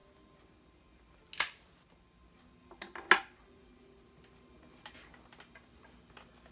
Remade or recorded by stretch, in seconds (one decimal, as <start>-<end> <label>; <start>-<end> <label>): 0.0-6.5 recorded